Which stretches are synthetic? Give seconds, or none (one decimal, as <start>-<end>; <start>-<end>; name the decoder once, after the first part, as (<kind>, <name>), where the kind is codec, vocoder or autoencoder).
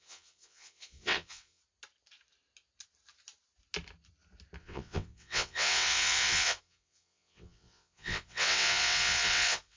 0.0-1.6 (vocoder, WaveNeXt); 4.6-9.8